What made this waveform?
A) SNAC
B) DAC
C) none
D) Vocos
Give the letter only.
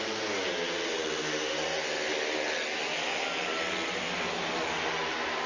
C